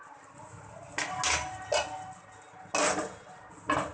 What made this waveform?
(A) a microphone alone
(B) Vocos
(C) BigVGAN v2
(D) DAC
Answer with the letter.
A